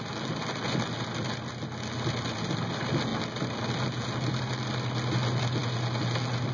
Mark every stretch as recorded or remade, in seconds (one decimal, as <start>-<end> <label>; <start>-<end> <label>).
0.0-6.5 recorded